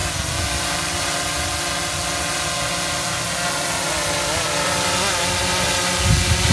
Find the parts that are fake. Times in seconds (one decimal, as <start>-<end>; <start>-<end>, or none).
none